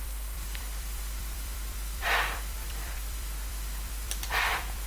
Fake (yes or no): yes